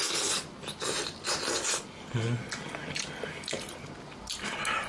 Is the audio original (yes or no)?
yes